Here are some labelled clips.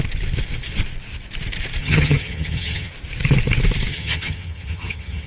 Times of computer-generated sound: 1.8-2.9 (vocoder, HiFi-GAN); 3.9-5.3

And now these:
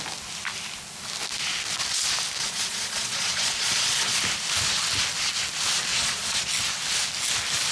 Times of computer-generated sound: 2.4-4.2 (vocoder, Vocos); 5.9-6.5

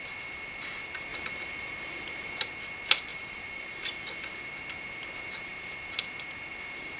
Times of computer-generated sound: 1.1-2.4 (vocoder, BigVGAN v2); 3.1-4.3